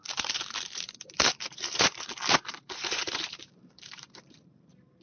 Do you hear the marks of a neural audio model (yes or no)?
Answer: yes